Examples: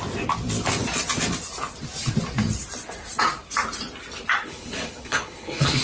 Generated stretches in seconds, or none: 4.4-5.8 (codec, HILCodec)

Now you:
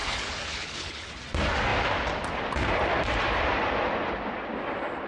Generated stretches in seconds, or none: 0.0-1.1 (codec, HILCodec)

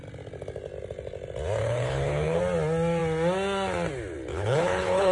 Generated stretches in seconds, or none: 1.6-2.4 (codec, HILCodec); 4.3-5.1